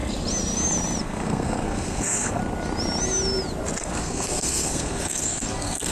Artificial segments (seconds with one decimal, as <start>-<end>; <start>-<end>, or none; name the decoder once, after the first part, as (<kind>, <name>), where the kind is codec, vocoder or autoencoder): 1.0-2.4 (codec, SNAC); 3.8-5.9